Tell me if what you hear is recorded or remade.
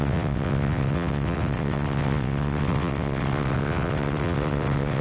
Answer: remade